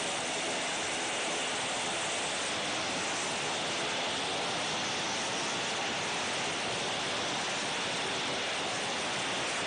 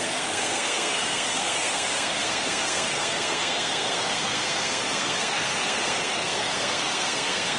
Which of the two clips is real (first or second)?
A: first